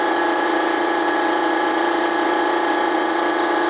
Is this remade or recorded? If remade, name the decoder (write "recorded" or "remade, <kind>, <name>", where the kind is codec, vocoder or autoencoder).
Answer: remade, vocoder, WaveNeXt